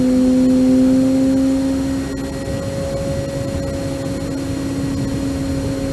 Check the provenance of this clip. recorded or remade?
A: recorded